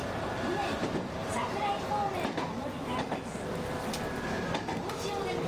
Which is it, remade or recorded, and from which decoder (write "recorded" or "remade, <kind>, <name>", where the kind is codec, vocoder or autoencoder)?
recorded